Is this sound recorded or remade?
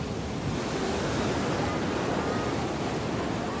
recorded